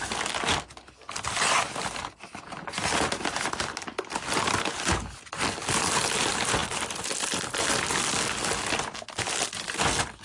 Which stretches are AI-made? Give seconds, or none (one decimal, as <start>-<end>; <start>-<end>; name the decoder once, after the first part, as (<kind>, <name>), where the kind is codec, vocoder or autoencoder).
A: 6.6-7.5 (vocoder, BigVGAN v2)